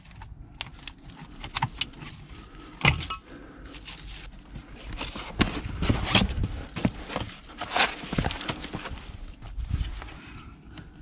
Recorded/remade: recorded